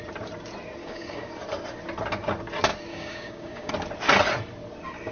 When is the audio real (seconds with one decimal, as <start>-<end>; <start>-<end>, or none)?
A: 0.0-0.8; 1.3-2.9; 3.7-5.1